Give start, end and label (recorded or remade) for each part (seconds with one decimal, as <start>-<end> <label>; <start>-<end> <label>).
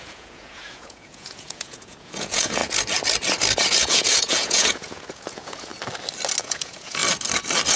0.0-2.6 remade; 2.6-3.7 recorded; 3.7-5.7 remade; 5.7-6.4 recorded; 6.4-7.0 remade; 7.0-7.8 recorded